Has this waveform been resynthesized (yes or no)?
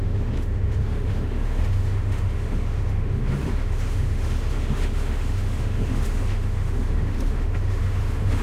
yes